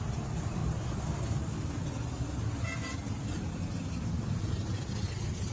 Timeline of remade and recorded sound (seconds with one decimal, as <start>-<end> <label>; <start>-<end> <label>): 0.0-5.5 recorded